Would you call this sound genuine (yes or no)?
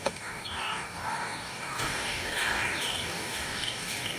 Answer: no